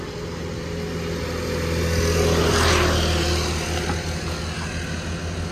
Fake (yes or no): no